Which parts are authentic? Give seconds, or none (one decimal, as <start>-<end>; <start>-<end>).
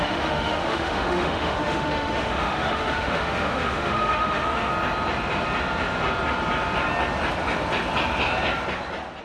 4.7-9.2